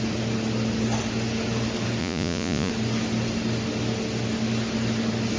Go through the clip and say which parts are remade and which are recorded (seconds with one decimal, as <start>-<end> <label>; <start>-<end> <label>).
0.0-2.0 recorded; 2.0-2.7 remade; 2.7-5.4 recorded